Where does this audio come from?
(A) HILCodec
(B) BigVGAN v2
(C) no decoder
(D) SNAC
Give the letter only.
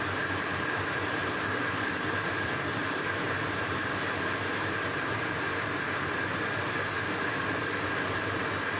B